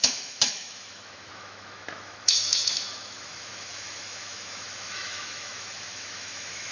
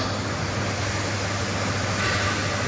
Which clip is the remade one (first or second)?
first